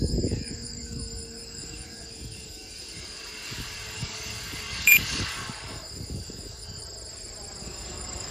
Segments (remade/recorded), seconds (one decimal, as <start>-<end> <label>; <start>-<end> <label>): 0.0-6.8 remade; 6.8-7.6 recorded; 7.6-8.3 remade